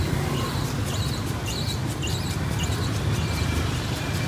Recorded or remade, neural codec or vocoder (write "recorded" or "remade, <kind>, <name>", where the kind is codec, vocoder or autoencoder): recorded